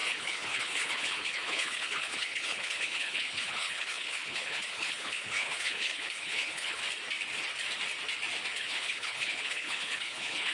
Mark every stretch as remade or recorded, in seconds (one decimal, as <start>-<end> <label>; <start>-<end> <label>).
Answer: 0.0-6.8 remade; 6.8-8.6 recorded; 8.6-10.5 remade